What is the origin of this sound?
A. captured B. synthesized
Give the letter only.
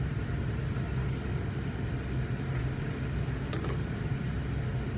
A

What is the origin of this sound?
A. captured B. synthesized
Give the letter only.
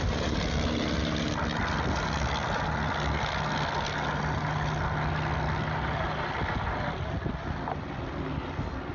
A